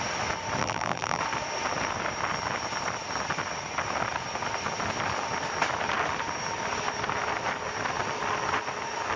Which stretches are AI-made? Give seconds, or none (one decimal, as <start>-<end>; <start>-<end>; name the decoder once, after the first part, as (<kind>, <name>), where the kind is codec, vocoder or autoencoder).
0.6-1.2 (vocoder, BigVGAN v2)